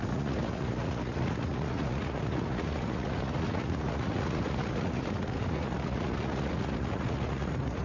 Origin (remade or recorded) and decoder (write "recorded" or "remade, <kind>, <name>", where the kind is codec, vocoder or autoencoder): remade, vocoder, Vocos